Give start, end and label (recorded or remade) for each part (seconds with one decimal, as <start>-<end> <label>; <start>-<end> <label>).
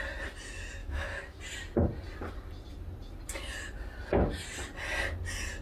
0.0-0.8 recorded; 0.8-1.4 remade; 1.4-5.6 recorded